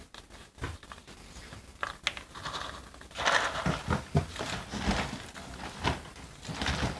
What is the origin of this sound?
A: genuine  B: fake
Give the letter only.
A